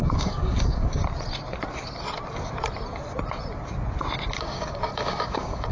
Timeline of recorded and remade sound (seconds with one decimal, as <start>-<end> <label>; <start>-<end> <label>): 0.0-1.0 remade; 1.0-4.4 recorded; 4.4-5.7 remade